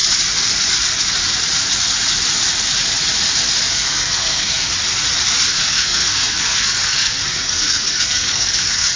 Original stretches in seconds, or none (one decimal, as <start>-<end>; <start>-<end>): 0.0-3.7; 4.7-5.5